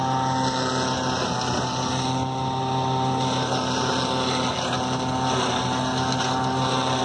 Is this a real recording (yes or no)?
yes